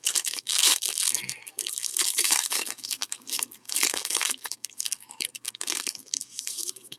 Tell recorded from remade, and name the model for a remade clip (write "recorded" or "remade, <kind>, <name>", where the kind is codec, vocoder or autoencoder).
remade, codec, SNAC